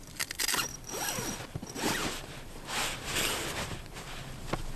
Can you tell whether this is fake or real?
fake